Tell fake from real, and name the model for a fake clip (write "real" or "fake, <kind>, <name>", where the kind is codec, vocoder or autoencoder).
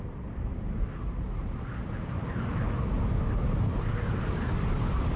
real